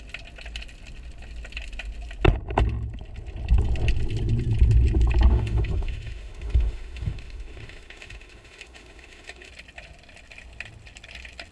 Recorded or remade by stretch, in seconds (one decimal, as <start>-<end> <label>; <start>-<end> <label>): 0.0-5.3 recorded; 5.3-9.5 remade; 9.5-11.5 recorded